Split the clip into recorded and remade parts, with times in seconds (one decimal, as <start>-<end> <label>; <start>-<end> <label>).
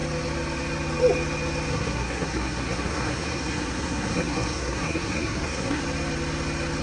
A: 0.0-1.7 recorded; 1.7-5.8 remade; 5.8-6.8 recorded